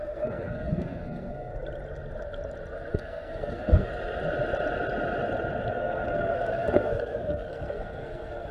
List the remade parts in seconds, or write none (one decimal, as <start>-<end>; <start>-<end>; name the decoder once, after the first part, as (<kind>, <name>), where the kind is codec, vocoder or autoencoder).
0.0-1.5 (codec, SNAC); 2.9-3.9; 5.7-8.5